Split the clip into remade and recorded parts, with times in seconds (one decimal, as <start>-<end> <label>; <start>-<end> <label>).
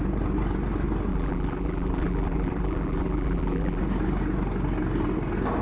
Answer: 0.0-1.1 recorded; 1.1-3.8 remade; 3.8-5.6 recorded